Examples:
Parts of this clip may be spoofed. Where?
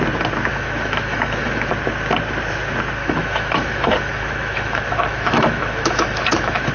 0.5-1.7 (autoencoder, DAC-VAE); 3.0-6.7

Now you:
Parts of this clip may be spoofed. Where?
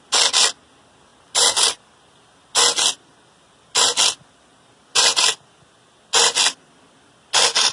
none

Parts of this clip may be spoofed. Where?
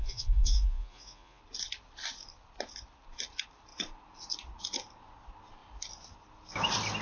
0.0-1.4 (vocoder, Vocos)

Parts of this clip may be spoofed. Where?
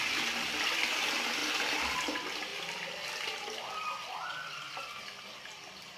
none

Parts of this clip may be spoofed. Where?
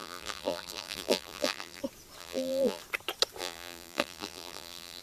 0.0-1.8 (vocoder, BigVGAN v2); 2.2-2.8; 3.4-5.0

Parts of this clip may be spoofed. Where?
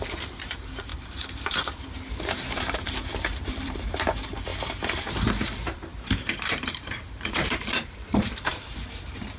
0.0-4.5 (vocoder, BigVGAN v2); 5.3-9.4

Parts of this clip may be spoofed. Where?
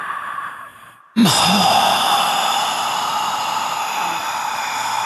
4.2-5.1 (vocoder, BigVGAN v2)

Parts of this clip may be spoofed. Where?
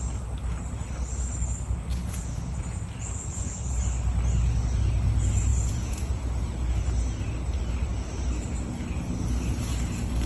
1.9-3.8 (vocoder, Vocos); 5.5-6.2